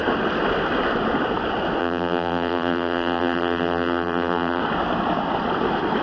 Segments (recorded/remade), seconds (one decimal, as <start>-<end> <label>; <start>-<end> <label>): 0.0-1.8 recorded; 1.8-4.6 remade; 4.6-6.0 recorded